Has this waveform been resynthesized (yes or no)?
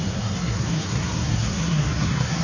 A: yes